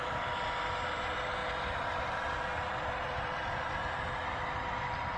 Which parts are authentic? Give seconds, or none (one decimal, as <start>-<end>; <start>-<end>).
0.0-5.2